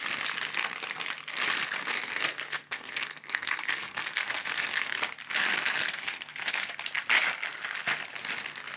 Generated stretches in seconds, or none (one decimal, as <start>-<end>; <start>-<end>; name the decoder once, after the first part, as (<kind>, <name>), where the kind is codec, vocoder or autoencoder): 1.8-5.0 (codec, SNAC); 5.9-6.7